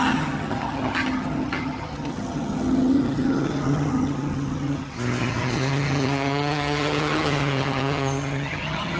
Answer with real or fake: fake